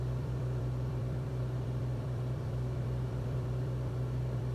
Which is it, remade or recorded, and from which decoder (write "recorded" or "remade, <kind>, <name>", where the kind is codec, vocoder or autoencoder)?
remade, vocoder, BigVGAN v2